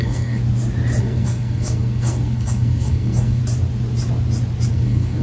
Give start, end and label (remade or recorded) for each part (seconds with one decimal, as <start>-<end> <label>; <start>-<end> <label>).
0.0-0.4 remade; 0.4-1.0 recorded; 1.0-3.4 remade; 3.4-4.7 recorded; 4.7-5.2 remade